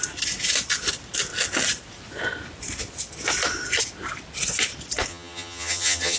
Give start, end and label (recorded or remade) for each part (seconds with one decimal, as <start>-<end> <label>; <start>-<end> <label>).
0.0-5.1 recorded; 5.1-6.2 remade